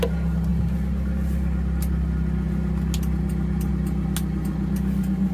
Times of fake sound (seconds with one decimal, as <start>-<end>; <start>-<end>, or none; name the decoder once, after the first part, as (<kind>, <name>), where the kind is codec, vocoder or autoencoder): none